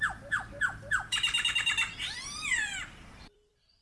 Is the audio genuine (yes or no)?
no